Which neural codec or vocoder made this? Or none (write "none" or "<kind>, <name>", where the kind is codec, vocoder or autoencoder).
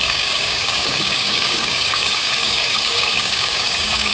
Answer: codec, DAC